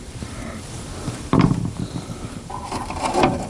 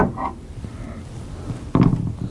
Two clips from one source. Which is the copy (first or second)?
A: first